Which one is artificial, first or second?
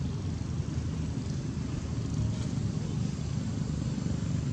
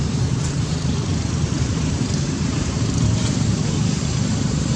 second